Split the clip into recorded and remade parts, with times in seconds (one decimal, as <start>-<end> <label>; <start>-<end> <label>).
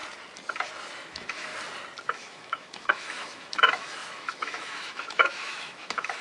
0.0-1.1 recorded; 1.1-1.5 remade; 1.5-2.1 recorded; 2.1-6.2 remade